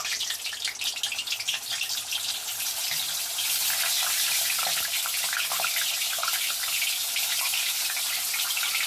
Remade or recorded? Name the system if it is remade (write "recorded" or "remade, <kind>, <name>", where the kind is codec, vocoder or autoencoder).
recorded